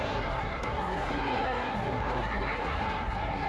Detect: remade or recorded remade